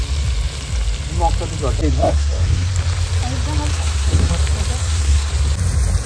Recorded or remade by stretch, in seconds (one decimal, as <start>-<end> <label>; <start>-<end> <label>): 0.0-2.0 recorded; 2.0-2.7 remade; 2.7-3.7 recorded; 3.7-4.3 remade; 4.3-4.8 recorded; 4.8-5.3 remade; 5.3-6.1 recorded